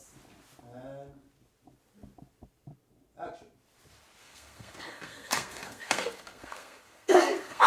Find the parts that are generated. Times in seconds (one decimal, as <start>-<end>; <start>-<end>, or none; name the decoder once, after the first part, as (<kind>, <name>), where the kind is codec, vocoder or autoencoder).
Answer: 4.2-7.7 (codec, SNAC)